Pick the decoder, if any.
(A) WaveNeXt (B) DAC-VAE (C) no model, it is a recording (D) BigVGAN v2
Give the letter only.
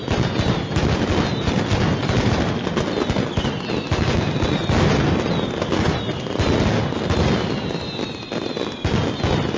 C